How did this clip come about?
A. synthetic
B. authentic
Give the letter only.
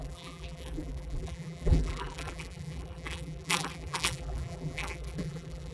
A